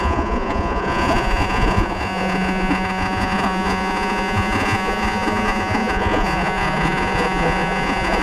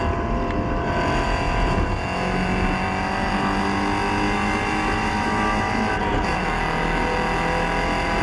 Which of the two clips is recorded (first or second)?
second